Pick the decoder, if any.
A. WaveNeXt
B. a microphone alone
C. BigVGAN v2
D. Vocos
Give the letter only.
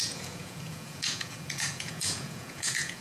D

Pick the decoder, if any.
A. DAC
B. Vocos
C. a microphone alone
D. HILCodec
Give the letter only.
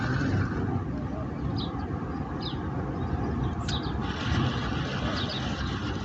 C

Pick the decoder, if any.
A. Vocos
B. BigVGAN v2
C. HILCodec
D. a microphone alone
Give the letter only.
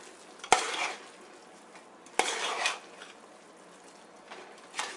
D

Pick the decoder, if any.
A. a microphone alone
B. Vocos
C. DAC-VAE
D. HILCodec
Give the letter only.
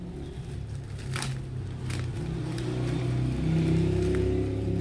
A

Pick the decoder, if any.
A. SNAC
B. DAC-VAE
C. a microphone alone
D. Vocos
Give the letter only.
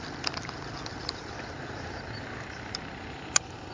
C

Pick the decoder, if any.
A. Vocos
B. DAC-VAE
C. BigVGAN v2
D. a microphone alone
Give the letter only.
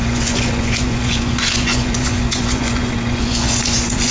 A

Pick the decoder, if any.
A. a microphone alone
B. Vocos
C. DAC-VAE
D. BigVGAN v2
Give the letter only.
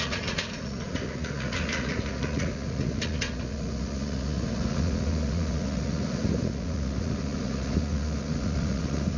B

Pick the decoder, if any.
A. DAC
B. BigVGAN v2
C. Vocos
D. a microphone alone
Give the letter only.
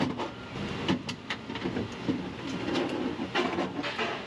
D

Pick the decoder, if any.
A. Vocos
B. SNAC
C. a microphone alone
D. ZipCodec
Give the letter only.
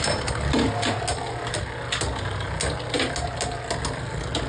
C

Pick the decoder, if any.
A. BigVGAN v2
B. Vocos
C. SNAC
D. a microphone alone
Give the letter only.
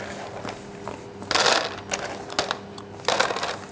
D